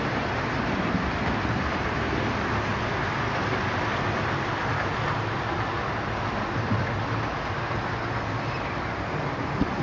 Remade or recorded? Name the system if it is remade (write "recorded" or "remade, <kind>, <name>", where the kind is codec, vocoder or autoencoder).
recorded